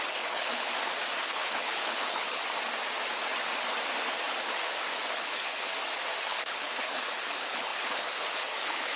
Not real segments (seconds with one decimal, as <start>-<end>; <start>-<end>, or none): 0.0-0.7; 1.2-2.4; 5.1-5.7; 6.2-9.0